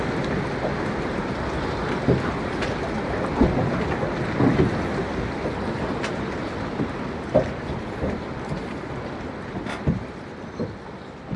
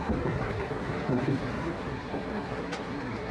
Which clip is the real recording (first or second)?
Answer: first